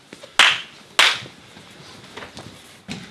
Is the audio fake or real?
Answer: real